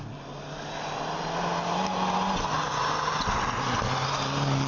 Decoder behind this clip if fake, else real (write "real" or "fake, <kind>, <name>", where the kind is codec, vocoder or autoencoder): real